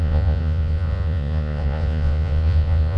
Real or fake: fake